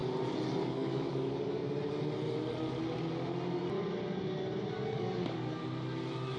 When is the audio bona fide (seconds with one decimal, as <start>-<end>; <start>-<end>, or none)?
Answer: 0.0-0.6; 1.6-4.7; 5.6-6.4